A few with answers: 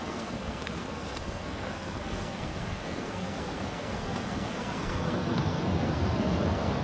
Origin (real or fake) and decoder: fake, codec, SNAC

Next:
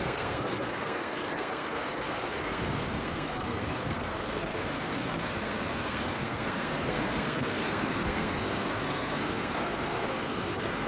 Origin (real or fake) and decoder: fake, codec, SNAC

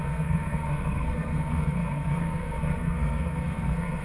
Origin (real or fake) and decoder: fake, codec, SNAC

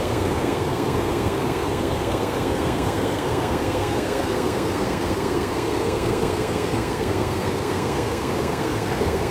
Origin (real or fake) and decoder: fake, codec, SNAC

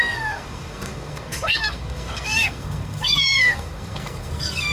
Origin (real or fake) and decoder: fake, codec, SNAC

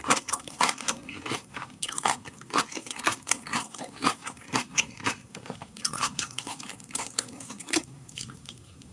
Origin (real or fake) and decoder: fake, codec, SNAC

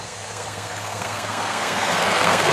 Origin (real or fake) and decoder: fake, codec, SNAC